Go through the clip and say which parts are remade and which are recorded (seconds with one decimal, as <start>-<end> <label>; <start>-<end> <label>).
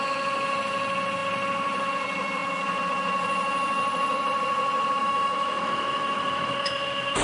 0.0-5.0 recorded; 5.0-7.2 remade